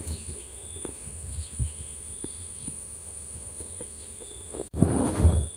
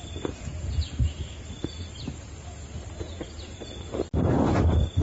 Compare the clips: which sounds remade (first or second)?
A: first